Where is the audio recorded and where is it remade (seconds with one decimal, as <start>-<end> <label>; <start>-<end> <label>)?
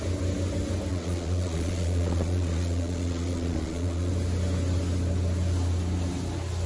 0.0-0.9 recorded; 0.9-4.1 remade; 4.1-6.7 recorded